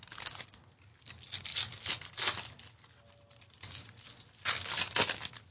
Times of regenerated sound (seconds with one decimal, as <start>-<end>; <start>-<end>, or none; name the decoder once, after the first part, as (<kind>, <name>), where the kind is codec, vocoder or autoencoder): none